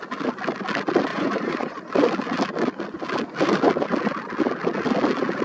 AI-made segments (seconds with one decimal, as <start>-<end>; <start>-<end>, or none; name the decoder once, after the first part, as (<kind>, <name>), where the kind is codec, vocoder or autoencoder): 1.1-1.9 (vocoder, Vocos)